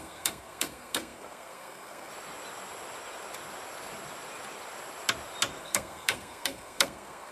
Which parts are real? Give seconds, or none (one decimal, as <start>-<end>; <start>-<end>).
2.1-5.6